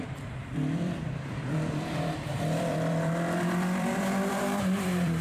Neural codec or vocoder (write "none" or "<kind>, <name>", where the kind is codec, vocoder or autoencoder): vocoder, BigVGAN v2